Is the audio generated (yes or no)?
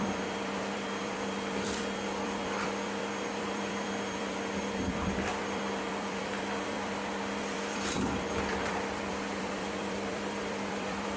yes